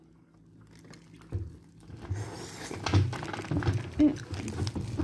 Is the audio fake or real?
real